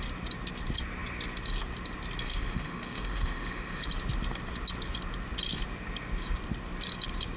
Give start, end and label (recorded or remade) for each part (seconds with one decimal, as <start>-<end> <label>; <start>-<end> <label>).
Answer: 0.0-2.3 recorded; 2.3-3.9 remade; 3.9-7.4 recorded